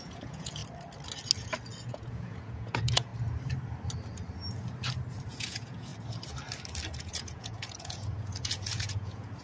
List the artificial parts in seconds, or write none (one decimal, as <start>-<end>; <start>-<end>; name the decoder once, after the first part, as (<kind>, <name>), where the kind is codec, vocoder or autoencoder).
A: 0.0-0.6 (vocoder, Vocos); 1.9-3.1; 5.3-5.9; 7.0-9.4